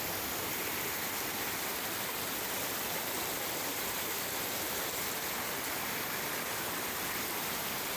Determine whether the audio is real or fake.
real